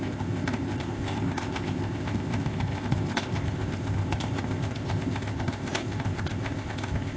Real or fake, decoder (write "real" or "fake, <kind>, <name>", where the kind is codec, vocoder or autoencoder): fake, codec, ZipCodec